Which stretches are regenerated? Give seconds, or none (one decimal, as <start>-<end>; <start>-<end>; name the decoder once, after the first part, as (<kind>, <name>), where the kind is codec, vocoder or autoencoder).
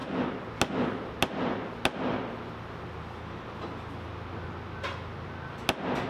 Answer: none